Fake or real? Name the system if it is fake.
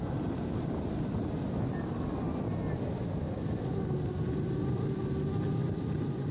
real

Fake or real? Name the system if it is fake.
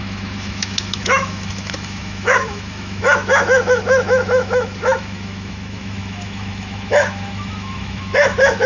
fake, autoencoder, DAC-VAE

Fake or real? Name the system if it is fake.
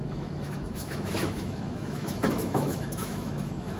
fake, autoencoder, DAC-VAE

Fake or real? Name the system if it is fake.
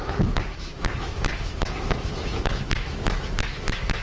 fake, autoencoder, DAC-VAE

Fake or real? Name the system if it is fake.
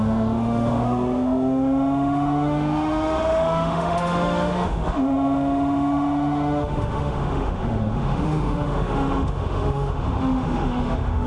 fake, autoencoder, DAC-VAE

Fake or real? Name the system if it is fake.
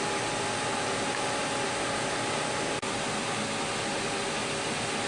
real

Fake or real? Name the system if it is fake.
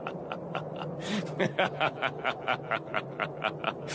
real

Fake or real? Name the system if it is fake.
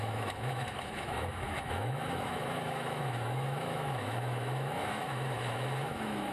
fake, autoencoder, DAC-VAE